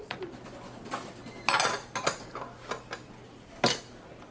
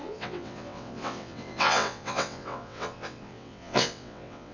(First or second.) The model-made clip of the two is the second